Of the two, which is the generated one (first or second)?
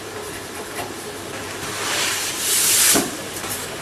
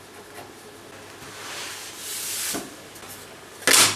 first